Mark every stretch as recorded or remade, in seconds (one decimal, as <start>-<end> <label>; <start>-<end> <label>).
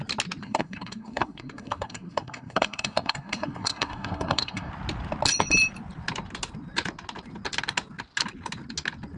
0.0-0.4 recorded; 0.4-4.7 remade; 4.7-9.2 recorded